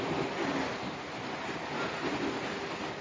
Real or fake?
real